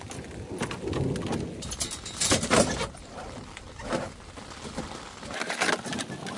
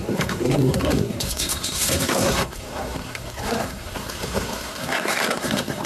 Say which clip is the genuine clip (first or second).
first